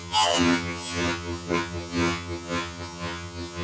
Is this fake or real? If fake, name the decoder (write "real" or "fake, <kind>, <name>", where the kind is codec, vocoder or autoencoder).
fake, vocoder, HiFi-GAN